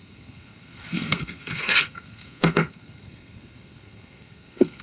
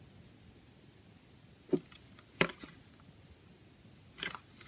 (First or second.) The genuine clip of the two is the second